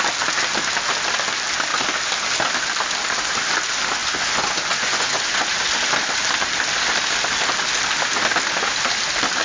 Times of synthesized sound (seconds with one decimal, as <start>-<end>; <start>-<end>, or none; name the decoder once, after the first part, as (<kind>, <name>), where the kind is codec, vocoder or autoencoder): 4.0-5.4 (vocoder, Vocos)